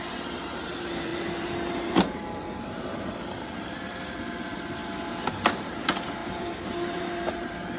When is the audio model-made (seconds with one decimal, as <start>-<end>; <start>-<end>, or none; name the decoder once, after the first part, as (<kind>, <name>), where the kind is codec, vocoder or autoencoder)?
0.0-4.8 (vocoder, BigVGAN v2); 5.3-7.8